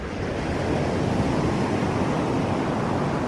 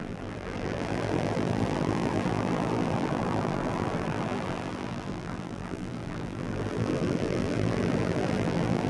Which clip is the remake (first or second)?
second